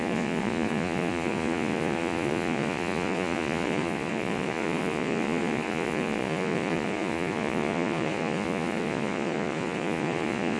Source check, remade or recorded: remade